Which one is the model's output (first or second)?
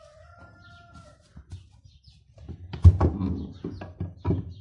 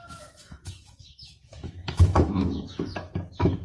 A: second